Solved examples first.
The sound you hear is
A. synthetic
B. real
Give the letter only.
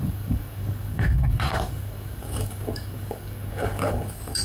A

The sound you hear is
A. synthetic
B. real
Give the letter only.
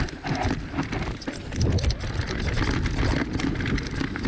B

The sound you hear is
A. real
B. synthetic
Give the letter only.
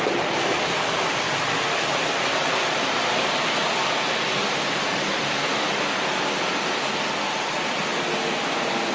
A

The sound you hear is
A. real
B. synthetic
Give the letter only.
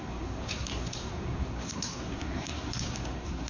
B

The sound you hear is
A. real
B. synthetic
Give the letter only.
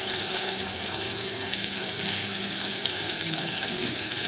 B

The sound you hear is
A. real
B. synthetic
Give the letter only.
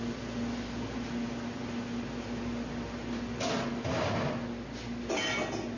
A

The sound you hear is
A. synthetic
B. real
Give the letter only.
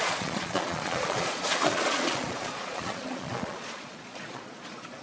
A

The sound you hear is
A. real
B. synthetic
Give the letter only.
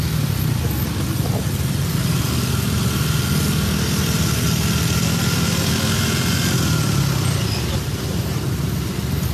A